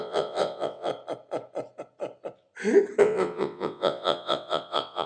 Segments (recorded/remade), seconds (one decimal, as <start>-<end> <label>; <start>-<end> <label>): 0.0-0.9 remade; 0.9-3.0 recorded; 3.0-5.1 remade